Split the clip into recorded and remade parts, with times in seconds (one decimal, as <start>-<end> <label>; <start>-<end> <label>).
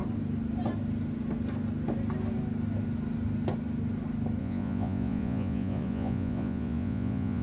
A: 0.0-4.4 recorded; 4.4-7.4 remade